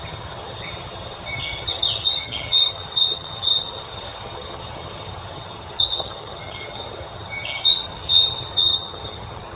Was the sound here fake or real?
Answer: fake